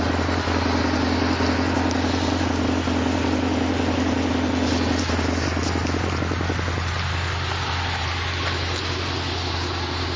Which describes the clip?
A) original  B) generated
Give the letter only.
A